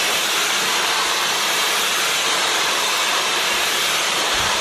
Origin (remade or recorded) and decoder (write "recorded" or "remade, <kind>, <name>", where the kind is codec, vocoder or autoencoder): remade, vocoder, BigVGAN v2